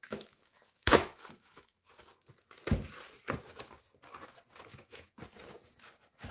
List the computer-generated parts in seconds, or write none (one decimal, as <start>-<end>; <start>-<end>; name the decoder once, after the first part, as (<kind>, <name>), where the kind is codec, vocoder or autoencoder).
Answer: 0.0-1.9 (autoencoder, DAC-VAE); 4.7-5.2